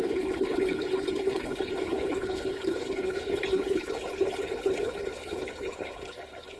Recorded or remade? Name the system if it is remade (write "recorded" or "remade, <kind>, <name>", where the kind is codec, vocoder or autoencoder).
remade, codec, HILCodec